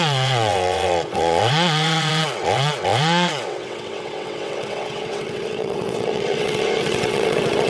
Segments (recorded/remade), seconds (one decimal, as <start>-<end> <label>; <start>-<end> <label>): 0.0-7.7 remade